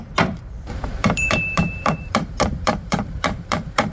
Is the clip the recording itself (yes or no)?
no